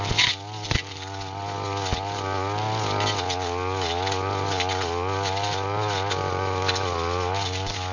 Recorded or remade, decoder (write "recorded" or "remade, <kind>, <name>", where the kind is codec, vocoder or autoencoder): recorded